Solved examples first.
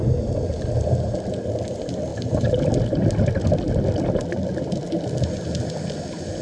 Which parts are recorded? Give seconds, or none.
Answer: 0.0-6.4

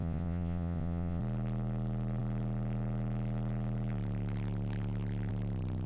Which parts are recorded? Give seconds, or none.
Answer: 1.2-5.9